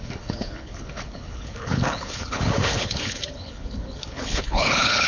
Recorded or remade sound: remade